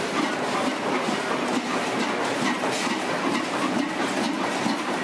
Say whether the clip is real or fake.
real